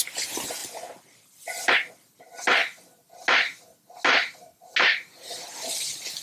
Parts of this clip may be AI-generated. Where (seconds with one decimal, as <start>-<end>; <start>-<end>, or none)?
0.6-1.9